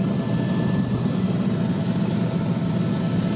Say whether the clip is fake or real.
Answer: real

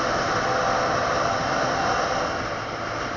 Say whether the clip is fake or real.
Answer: real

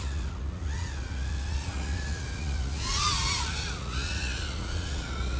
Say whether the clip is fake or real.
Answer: fake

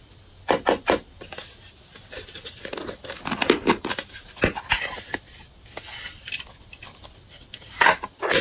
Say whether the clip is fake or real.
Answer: real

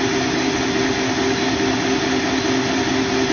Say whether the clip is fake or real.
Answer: real